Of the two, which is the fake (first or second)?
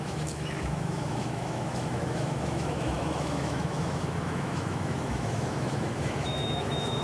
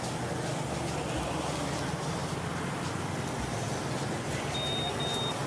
first